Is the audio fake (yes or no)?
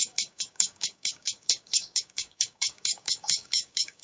yes